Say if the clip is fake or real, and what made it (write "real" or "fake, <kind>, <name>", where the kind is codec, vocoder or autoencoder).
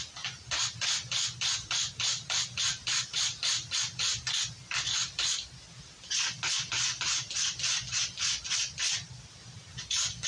real